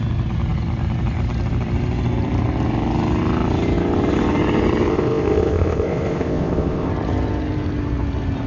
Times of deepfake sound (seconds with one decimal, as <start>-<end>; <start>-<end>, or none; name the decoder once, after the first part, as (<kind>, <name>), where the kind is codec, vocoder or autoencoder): 4.9-6.9 (codec, ZipCodec)